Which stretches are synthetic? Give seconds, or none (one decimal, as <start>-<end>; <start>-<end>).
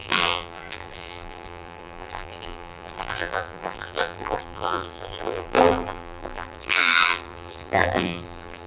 0.0-8.7